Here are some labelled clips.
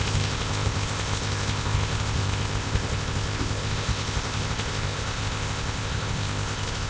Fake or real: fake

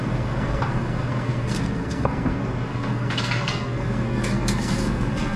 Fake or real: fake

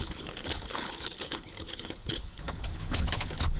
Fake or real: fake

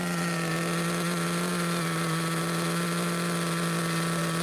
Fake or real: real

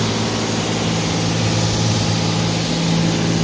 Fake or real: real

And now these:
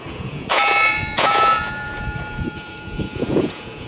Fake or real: fake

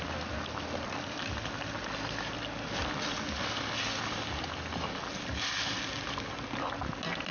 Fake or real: real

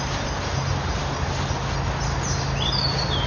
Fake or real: real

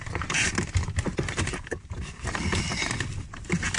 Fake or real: fake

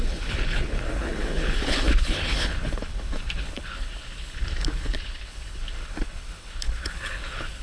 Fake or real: fake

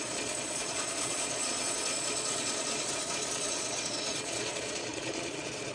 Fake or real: fake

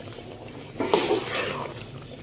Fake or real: real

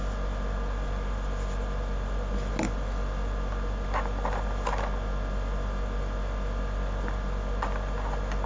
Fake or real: real